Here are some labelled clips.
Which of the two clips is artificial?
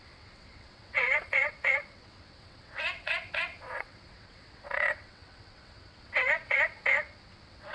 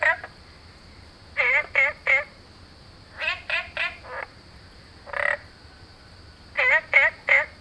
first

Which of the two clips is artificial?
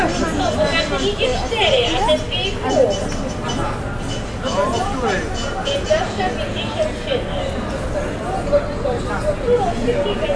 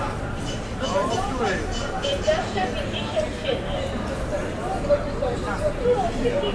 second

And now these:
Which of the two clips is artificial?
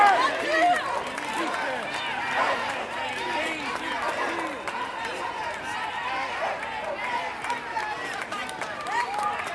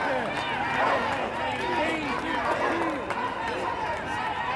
first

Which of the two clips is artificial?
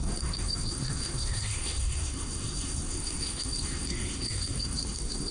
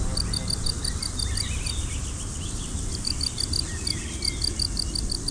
first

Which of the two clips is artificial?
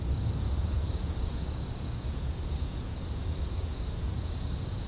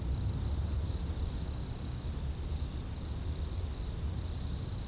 first